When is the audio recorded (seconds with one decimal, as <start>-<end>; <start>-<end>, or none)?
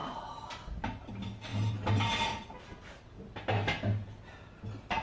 0.0-5.0